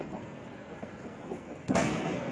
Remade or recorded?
remade